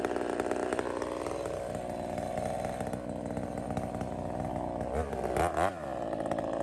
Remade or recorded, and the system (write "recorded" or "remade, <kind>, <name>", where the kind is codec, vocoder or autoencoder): recorded